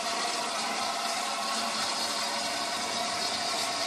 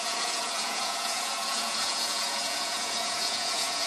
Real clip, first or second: first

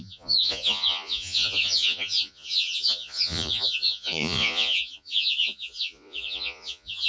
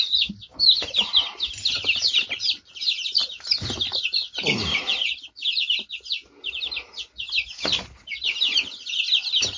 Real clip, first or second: second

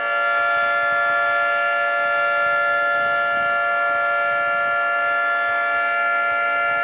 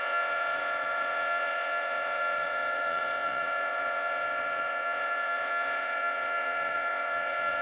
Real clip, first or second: first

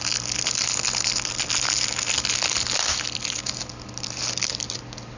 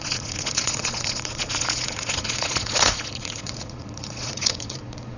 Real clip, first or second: first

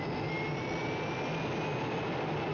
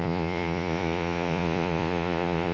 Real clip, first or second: first